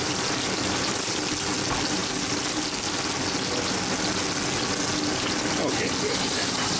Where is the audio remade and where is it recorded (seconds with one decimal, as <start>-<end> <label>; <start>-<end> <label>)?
0.0-6.8 recorded